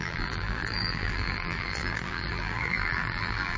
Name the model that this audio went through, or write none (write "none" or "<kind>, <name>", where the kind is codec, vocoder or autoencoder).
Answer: vocoder, BigVGAN v2